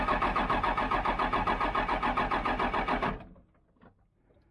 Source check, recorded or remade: recorded